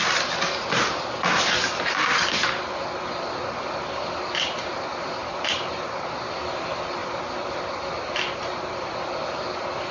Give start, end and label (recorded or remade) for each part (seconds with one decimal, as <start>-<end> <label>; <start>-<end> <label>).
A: 0.0-5.2 recorded; 5.2-6.1 remade; 6.1-7.0 recorded; 7.0-7.7 remade; 7.7-9.9 recorded